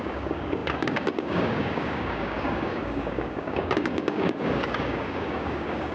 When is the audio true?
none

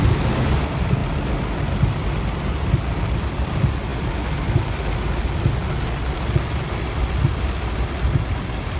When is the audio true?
0.0-8.8